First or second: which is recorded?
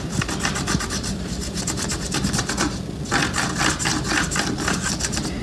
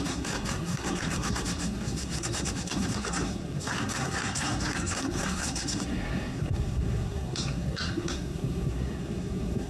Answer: first